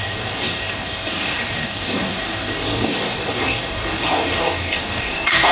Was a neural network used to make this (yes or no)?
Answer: yes